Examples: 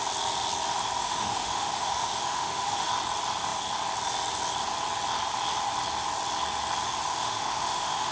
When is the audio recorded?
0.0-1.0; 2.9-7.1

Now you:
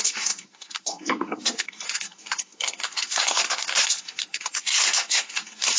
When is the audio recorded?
none

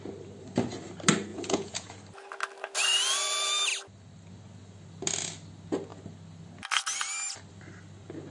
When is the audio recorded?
0.0-1.3; 1.9-8.3